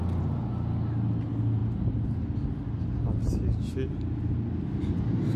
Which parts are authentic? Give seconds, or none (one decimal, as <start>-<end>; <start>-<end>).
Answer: 0.0-5.4